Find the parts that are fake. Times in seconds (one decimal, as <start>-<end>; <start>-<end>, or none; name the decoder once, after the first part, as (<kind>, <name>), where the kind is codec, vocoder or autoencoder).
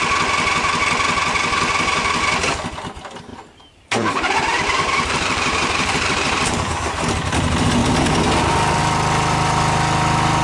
3.3-7.1 (vocoder, BigVGAN v2)